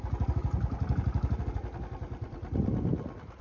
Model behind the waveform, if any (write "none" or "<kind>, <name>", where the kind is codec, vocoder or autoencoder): vocoder, BigVGAN v2